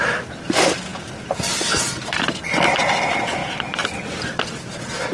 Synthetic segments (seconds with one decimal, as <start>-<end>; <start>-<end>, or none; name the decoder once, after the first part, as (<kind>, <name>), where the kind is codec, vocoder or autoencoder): none